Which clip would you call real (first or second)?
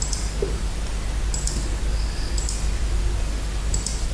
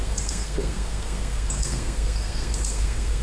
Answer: first